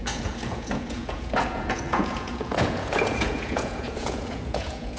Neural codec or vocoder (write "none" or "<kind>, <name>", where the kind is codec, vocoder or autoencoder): vocoder, Vocos